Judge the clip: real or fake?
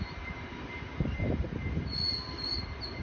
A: real